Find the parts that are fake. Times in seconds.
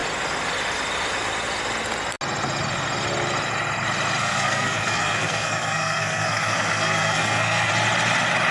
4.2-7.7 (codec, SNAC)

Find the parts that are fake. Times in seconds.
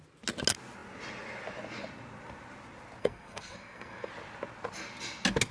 3.0-4.1 (codec, SNAC)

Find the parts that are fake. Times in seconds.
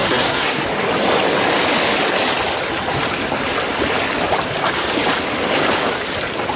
0.0-0.6 (codec, SNAC)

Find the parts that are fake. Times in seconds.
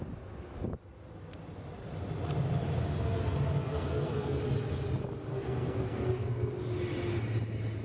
3.6-4.4 (codec, SNAC); 5.3-6.5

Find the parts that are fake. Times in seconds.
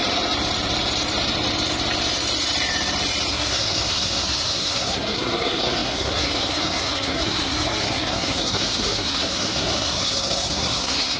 3.3-11.2 (codec, SNAC)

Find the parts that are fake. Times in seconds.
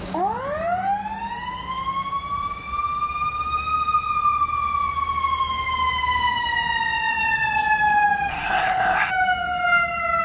8.3-9.1 (codec, SNAC)